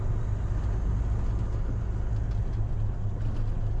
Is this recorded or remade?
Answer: recorded